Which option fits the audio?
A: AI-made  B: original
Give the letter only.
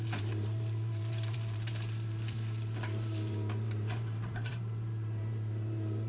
A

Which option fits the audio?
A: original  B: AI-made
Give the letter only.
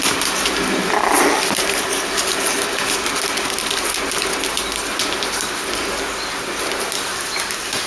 A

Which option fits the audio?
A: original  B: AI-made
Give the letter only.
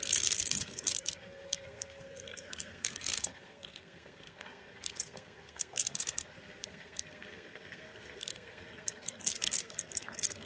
B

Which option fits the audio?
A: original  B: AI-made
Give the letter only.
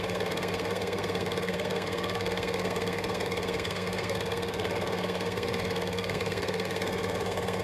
B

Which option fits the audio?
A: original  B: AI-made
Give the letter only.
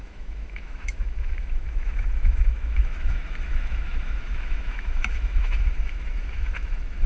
B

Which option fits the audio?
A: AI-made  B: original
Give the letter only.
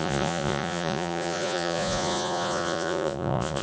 A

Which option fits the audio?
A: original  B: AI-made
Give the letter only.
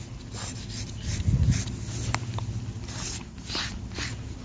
A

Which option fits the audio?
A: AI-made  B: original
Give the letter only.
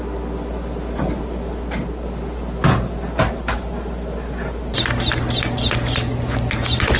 B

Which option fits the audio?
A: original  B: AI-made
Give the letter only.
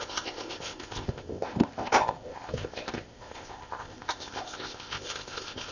B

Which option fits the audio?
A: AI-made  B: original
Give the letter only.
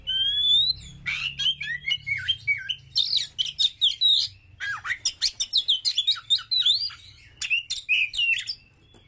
B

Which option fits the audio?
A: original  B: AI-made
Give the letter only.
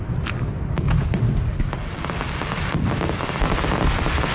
A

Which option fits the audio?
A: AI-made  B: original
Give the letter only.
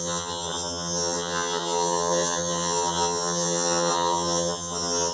A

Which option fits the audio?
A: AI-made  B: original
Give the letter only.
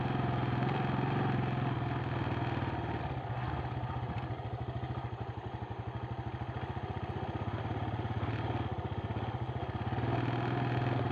B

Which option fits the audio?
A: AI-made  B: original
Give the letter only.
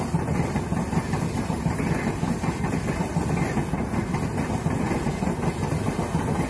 B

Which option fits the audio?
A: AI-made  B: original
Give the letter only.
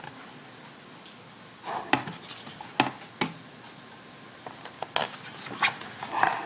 B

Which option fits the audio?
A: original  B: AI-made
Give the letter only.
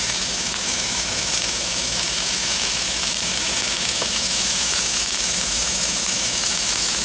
B